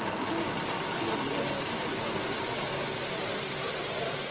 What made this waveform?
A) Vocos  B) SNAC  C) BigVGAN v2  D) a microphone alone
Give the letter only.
D